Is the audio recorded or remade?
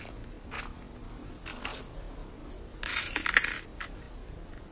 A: recorded